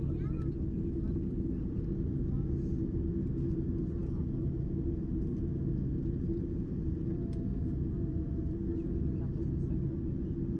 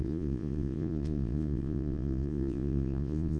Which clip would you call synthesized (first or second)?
second